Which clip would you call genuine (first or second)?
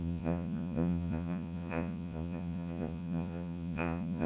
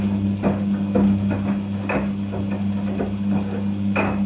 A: second